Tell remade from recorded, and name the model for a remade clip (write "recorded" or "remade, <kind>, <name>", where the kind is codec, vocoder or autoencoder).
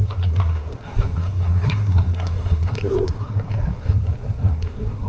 remade, codec, SNAC